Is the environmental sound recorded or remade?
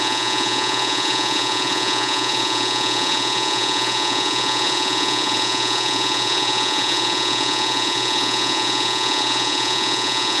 remade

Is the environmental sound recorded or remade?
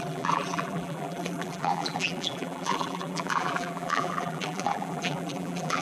remade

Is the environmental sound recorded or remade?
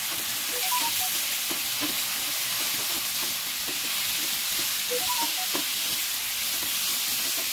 recorded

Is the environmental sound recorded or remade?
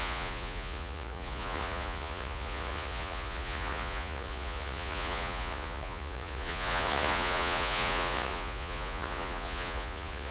remade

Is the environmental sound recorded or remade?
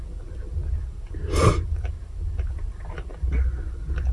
recorded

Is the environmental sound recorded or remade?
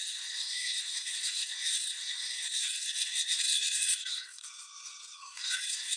remade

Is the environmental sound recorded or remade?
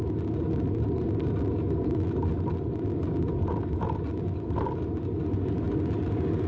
recorded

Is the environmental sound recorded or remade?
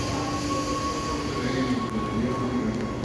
recorded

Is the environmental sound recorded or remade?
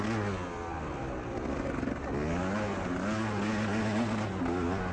recorded